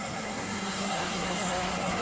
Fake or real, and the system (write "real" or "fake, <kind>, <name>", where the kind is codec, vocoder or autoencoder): fake, codec, SNAC